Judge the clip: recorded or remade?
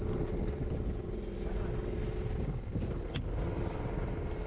recorded